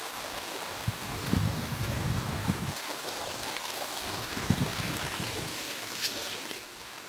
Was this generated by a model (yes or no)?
yes